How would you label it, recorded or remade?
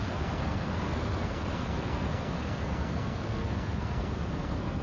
remade